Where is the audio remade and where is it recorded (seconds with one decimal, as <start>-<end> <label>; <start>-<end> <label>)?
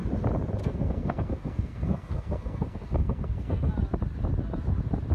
0.0-0.6 recorded; 0.6-3.7 remade; 3.7-5.1 recorded